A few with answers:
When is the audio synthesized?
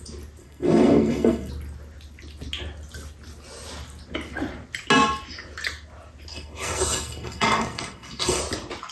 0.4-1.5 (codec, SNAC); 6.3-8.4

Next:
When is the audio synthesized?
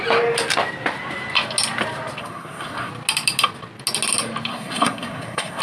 2.2-2.9 (codec, SNAC); 4.5-5.6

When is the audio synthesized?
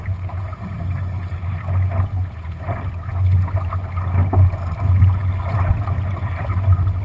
none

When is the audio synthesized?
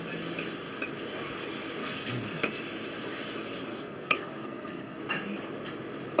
1.8-2.5 (codec, SNAC); 3.7-5.0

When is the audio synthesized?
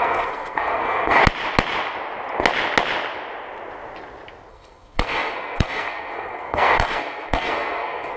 0.0-1.2 (codec, SNAC); 4.5-8.2